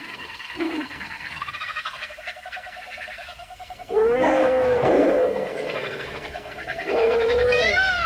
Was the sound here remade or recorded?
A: remade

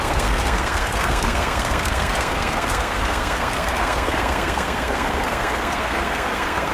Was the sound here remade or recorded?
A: remade